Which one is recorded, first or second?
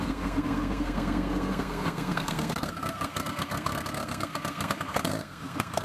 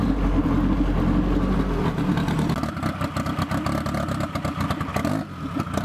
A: second